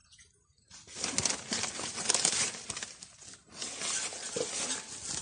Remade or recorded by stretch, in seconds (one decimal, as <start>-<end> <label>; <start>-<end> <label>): 0.0-5.2 recorded